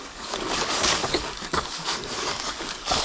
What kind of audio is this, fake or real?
fake